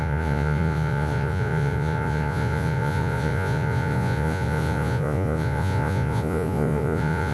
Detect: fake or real fake